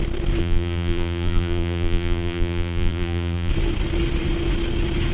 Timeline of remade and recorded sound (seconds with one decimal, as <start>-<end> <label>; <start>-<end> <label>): 0.0-0.4 recorded; 0.4-3.5 remade; 3.5-5.1 recorded